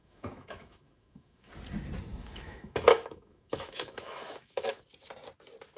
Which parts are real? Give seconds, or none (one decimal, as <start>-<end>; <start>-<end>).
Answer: 1.5-2.1; 4.8-5.8